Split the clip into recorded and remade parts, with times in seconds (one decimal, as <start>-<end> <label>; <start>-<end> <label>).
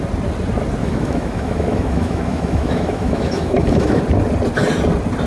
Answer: 0.0-0.8 recorded; 0.8-4.0 remade; 4.0-5.3 recorded